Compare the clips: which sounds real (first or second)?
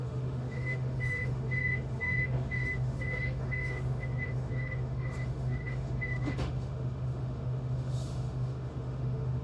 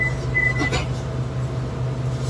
second